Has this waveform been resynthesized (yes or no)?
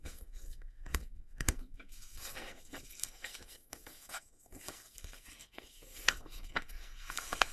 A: yes